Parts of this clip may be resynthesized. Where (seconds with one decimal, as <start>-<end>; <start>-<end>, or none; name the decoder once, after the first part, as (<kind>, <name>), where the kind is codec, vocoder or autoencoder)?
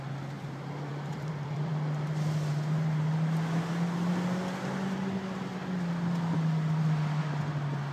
0.9-1.7 (vocoder, BigVGAN v2)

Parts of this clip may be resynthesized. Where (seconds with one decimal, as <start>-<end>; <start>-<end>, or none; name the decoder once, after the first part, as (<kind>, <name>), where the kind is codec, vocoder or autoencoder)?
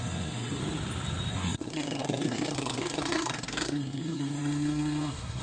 0.0-0.6 (codec, SNAC); 1.3-5.4